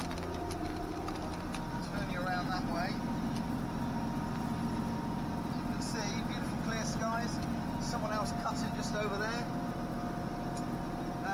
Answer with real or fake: real